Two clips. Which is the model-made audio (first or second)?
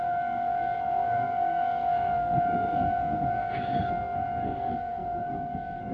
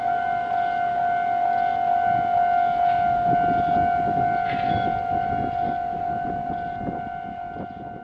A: first